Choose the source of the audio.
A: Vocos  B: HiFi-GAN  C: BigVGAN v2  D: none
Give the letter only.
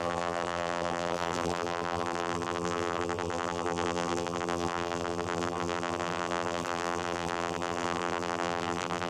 C